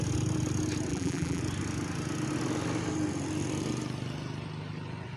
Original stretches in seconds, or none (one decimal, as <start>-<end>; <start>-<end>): 0.0-0.9; 1.4-5.2